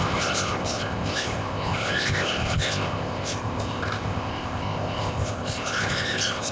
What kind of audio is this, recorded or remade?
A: remade